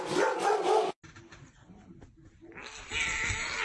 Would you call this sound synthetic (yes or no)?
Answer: no